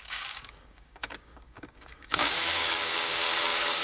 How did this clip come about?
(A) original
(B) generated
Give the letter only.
B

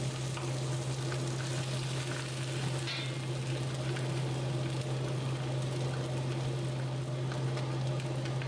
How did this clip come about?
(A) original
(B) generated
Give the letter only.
A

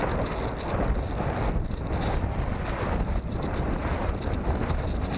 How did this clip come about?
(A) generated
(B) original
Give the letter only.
B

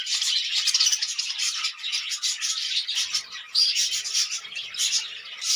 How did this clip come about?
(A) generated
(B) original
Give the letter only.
B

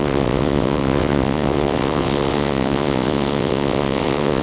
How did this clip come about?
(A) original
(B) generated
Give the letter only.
B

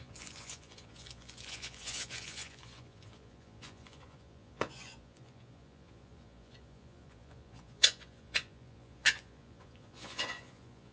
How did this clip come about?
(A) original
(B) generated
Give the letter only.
B